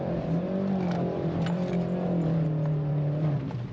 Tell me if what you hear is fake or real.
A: real